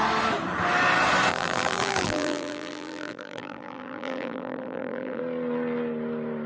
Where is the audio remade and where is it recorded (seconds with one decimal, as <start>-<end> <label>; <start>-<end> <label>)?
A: 0.0-1.3 recorded; 1.3-5.2 remade; 5.2-6.5 recorded

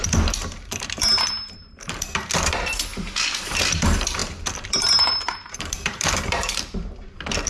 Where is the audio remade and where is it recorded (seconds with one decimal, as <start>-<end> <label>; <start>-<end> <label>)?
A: 0.0-2.9 remade; 2.9-3.4 recorded; 3.4-7.5 remade

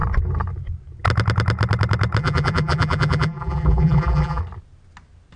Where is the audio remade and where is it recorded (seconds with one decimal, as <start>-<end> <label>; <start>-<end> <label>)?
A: 0.0-2.2 recorded; 2.2-4.4 remade; 4.4-5.4 recorded

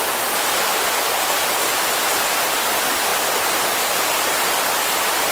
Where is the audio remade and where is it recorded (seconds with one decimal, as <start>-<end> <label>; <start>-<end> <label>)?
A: 0.0-0.7 recorded; 0.7-2.6 remade; 2.6-5.3 recorded

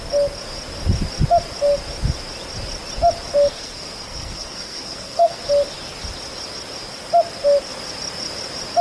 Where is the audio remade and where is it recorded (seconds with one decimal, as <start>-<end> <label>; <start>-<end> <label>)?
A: 0.0-3.5 recorded; 3.5-5.4 remade; 5.4-8.8 recorded